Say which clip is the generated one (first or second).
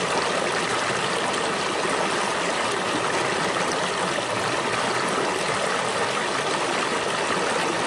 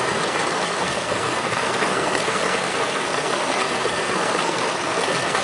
second